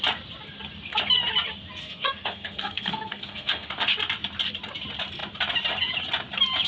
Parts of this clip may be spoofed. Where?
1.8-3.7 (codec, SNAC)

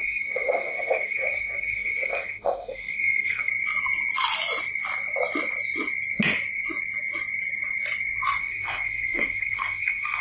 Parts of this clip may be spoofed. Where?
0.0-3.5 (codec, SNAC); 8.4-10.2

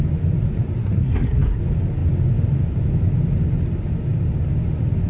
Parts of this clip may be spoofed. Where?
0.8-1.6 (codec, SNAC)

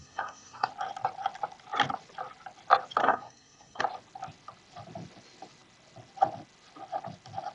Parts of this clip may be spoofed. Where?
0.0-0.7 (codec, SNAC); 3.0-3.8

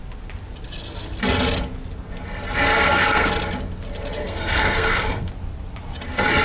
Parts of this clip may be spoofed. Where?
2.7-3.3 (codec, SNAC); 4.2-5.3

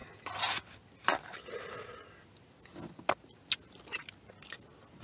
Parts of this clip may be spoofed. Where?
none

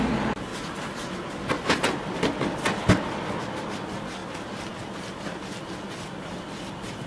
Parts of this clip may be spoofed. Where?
none